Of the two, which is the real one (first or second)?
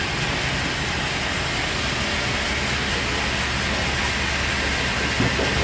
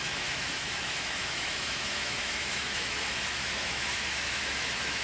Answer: first